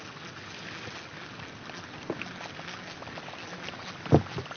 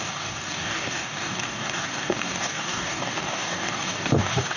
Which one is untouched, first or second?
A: first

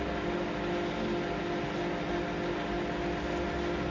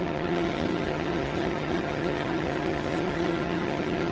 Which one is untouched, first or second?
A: first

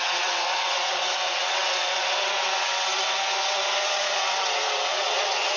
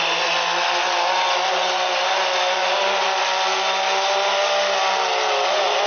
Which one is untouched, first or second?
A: second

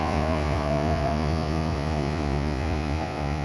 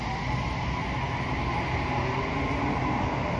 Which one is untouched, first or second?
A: second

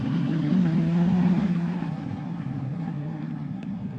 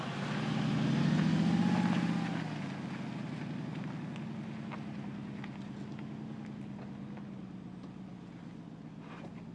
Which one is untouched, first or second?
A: second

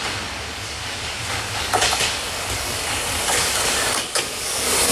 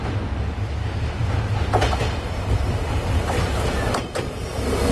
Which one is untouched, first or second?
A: second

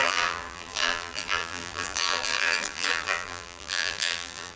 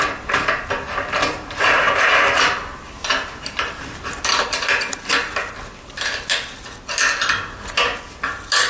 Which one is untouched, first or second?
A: second